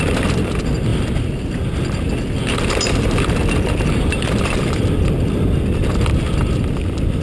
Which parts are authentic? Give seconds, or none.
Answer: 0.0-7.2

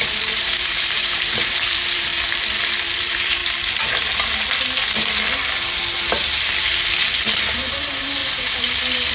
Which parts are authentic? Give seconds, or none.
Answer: 2.1-2.9; 3.4-7.4

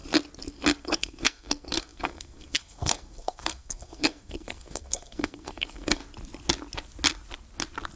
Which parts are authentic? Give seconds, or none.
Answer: 0.0-0.8; 6.0-8.0